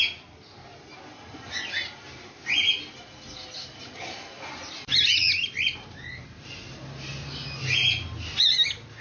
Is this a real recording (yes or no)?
yes